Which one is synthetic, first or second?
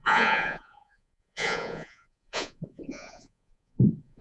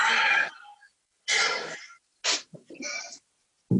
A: first